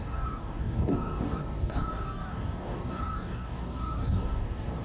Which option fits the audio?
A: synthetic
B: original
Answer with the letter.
A